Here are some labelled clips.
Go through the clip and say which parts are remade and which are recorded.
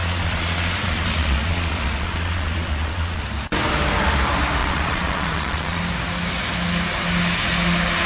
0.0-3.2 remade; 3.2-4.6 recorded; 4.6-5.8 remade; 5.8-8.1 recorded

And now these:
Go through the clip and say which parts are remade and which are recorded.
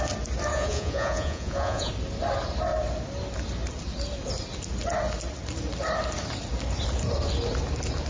0.0-0.5 recorded; 0.5-1.9 remade; 1.9-8.1 recorded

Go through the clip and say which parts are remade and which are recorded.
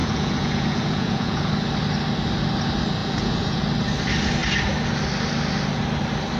0.0-1.5 remade; 1.5-3.0 recorded; 3.0-3.6 remade; 3.6-6.4 recorded